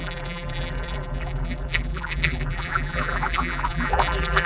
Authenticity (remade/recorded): remade